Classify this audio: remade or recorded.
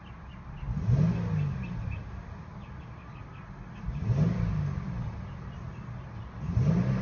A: recorded